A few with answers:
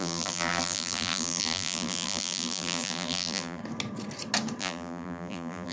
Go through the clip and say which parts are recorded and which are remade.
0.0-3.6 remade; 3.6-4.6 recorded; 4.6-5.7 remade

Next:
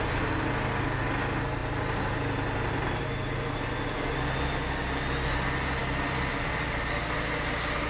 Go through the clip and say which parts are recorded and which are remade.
0.0-7.9 recorded

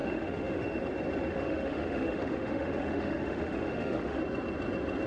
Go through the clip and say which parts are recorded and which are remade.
0.0-0.8 remade; 0.8-1.3 recorded; 1.3-4.2 remade; 4.2-5.1 recorded

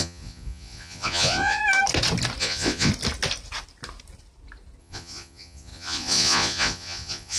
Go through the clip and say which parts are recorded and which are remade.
0.0-1.6 remade; 1.6-2.4 recorded; 2.4-2.9 remade; 2.9-4.8 recorded; 4.8-7.4 remade

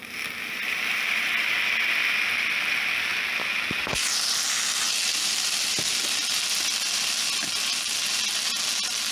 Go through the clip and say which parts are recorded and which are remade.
0.0-9.1 recorded

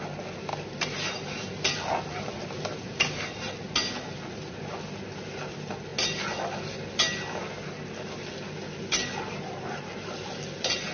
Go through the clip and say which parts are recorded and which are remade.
0.0-10.9 recorded

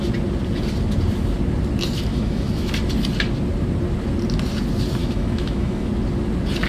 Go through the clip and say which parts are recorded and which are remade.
0.0-2.1 recorded; 2.1-2.7 remade; 2.7-5.0 recorded; 5.0-5.9 remade; 5.9-6.7 recorded

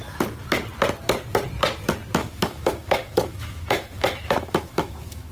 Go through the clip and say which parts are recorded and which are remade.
0.0-2.2 recorded; 2.2-5.3 remade